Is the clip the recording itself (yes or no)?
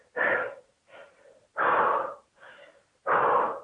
yes